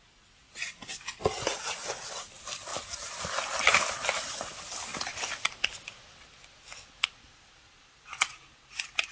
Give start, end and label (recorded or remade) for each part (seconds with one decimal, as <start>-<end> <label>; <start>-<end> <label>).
0.0-9.1 recorded